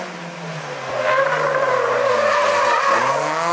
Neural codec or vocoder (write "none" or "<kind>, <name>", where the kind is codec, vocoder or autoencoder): none